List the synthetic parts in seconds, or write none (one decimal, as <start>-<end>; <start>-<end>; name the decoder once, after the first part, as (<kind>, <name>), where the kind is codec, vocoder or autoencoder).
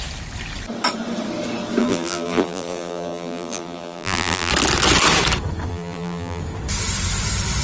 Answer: 1.8-4.5 (vocoder, BigVGAN v2); 5.7-6.4